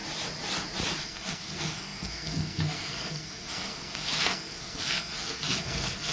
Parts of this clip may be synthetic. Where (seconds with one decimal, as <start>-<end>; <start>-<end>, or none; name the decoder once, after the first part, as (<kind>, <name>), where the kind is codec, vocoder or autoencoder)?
1.0-6.1 (codec, SNAC)